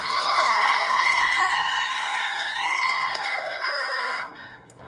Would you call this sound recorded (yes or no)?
no